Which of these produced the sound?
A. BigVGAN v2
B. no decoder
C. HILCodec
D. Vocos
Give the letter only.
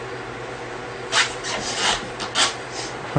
B